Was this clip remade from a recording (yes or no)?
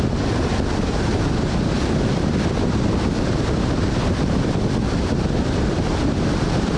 no